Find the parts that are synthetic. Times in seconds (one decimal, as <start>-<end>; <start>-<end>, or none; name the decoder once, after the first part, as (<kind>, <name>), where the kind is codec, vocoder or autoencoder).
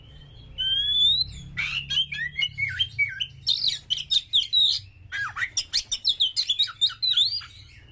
none